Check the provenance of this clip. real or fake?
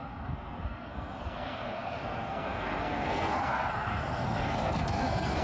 fake